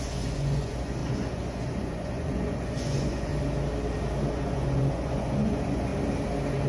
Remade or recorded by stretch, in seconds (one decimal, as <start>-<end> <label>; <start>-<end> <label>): 0.0-3.3 remade; 3.3-4.3 recorded; 4.3-5.9 remade; 5.9-6.7 recorded